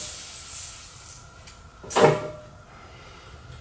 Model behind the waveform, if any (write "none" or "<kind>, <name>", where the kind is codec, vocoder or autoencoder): none